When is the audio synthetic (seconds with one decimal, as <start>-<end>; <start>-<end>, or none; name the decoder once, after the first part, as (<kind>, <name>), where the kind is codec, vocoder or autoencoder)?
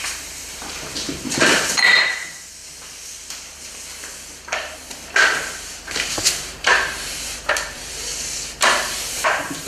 0.0-2.6 (vocoder, BigVGAN v2); 6.1-8.1; 9.1-9.7